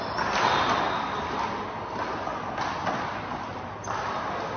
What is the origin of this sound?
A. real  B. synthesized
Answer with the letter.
A